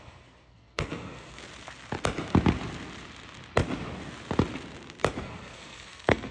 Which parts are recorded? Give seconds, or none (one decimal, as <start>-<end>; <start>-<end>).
1.4-5.2